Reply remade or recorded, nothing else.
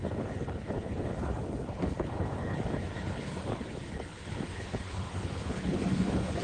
remade